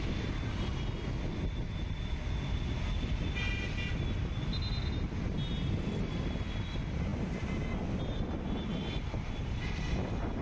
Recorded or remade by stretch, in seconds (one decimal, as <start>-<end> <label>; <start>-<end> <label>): 0.0-10.4 recorded